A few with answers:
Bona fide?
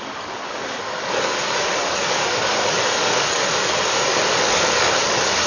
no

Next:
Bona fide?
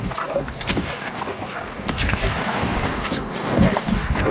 no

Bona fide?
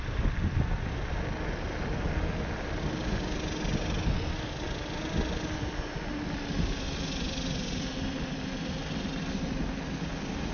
yes